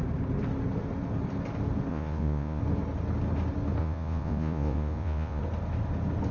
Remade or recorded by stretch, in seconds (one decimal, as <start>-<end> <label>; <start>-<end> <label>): 0.0-1.9 recorded; 1.9-2.6 remade; 2.6-3.8 recorded; 3.8-5.4 remade; 5.4-6.3 recorded